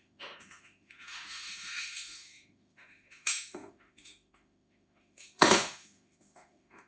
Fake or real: fake